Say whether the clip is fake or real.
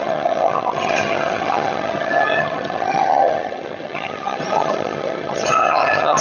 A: fake